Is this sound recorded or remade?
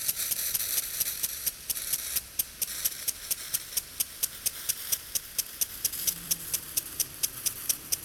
remade